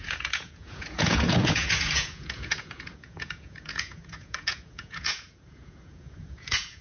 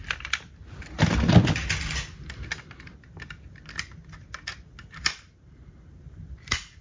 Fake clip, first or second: first